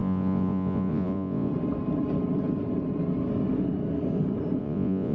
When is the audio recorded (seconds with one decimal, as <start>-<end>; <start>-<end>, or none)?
1.5-4.6